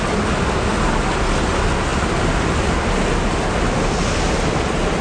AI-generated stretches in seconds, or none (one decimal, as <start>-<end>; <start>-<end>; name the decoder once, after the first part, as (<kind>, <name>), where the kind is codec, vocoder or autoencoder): none